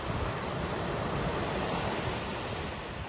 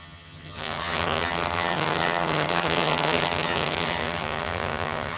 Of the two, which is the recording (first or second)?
first